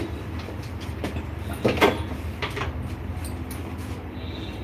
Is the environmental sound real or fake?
real